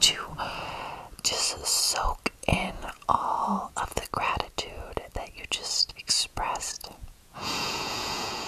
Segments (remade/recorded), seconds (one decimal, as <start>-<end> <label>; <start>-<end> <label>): 0.0-0.9 remade; 0.9-2.4 recorded; 2.4-4.0 remade; 4.0-5.9 recorded; 5.9-8.5 remade

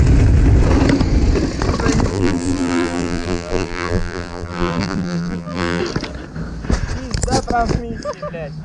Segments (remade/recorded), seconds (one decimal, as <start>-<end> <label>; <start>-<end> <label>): 0.0-2.1 recorded; 2.1-5.8 remade; 5.8-8.6 recorded

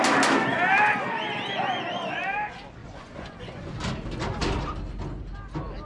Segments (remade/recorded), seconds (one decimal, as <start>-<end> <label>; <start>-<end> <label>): 0.0-2.8 recorded; 2.8-3.7 remade; 3.7-5.9 recorded

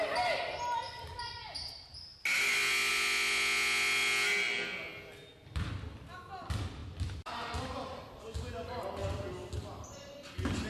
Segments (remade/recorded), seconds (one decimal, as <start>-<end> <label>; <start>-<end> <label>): 0.0-10.7 recorded